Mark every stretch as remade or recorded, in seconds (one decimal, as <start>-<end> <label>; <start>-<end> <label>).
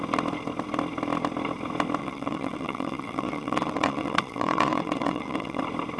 0.0-2.0 recorded; 2.0-5.6 remade; 5.6-6.0 recorded